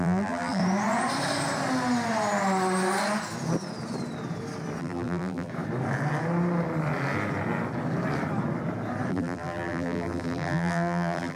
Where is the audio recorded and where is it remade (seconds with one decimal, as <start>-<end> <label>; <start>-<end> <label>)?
0.0-0.6 remade; 0.6-4.8 recorded; 4.8-5.5 remade; 5.5-9.1 recorded; 9.1-11.4 remade